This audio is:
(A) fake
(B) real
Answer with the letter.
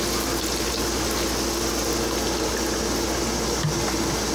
B